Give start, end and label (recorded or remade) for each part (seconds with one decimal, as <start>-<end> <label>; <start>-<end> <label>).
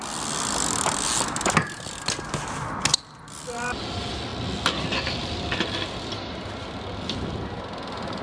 0.0-8.2 recorded